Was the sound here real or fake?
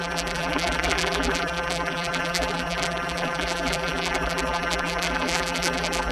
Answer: fake